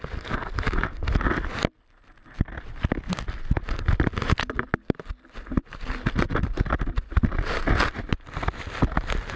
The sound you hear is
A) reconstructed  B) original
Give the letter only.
B